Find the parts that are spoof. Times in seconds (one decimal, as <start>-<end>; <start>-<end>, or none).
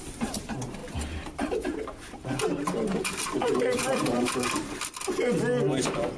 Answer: 0.8-2.5; 3.4-4.9